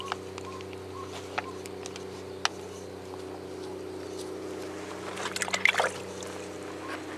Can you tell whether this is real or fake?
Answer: real